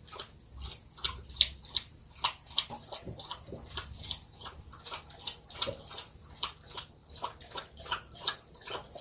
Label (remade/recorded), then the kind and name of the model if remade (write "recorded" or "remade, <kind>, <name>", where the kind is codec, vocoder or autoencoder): recorded